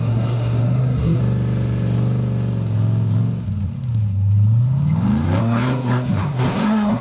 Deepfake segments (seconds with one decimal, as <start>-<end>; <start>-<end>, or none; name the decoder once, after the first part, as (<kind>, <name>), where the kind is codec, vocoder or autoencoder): 0.0-1.2 (codec, SNAC); 5.4-7.0